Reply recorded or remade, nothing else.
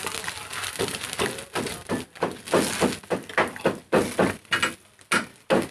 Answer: recorded